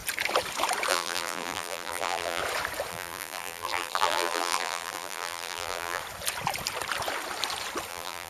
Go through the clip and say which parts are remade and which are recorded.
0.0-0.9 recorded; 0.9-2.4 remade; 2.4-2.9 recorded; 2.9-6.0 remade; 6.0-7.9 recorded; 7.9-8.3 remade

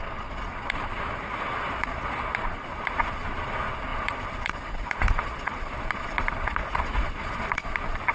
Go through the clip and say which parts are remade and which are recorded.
0.0-8.1 remade

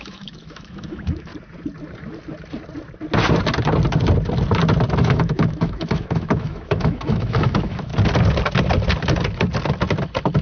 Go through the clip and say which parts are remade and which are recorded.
0.0-1.3 remade; 1.3-5.0 recorded; 5.0-7.9 remade; 7.9-10.4 recorded

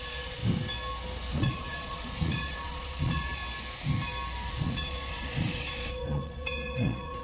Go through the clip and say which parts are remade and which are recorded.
0.0-0.4 remade; 0.4-1.3 recorded; 1.3-3.4 remade; 3.4-4.5 recorded; 4.5-7.2 remade

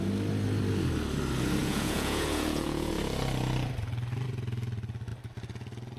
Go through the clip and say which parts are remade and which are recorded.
0.0-1.6 recorded; 1.6-2.9 remade; 2.9-6.0 recorded

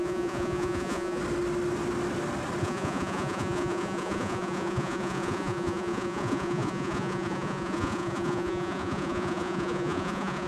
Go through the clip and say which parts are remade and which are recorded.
0.0-1.2 remade; 1.2-2.6 recorded; 2.6-10.5 remade